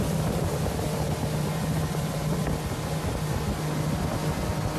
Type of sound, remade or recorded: recorded